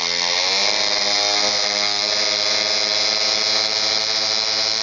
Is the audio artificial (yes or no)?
no